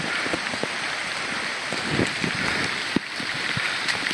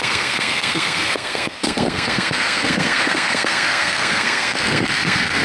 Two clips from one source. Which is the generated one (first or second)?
second